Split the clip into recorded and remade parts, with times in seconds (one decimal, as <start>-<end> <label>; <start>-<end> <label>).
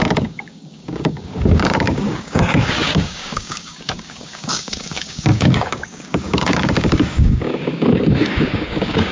0.0-9.1 remade